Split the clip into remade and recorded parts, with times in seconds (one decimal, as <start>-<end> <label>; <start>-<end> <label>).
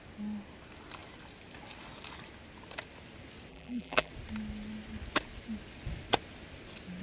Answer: 0.0-3.5 recorded; 3.5-4.1 remade; 4.1-7.0 recorded